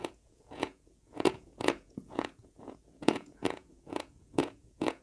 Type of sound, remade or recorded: remade